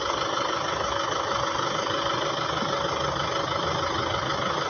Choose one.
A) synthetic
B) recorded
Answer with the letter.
B